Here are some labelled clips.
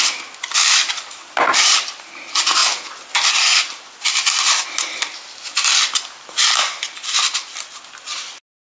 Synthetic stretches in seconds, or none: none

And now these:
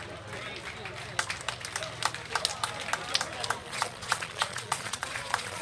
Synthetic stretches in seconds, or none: 3.6-5.6 (vocoder, Vocos)

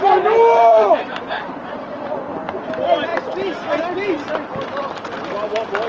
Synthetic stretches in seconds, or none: 0.7-2.3 (vocoder, Vocos)

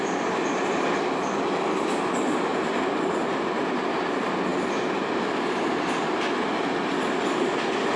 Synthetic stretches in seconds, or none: none

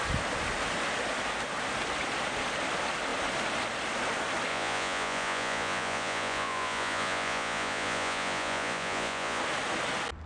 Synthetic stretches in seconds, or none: 4.5-9.4 (vocoder, Vocos)